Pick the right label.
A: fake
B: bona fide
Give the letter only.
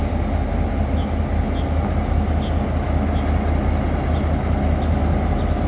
B